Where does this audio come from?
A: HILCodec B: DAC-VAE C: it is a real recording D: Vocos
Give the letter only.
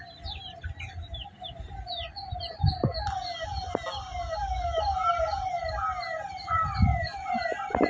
C